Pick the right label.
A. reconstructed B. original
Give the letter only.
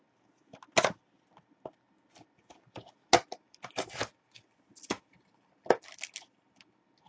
B